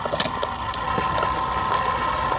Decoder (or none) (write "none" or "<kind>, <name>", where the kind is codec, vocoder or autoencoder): none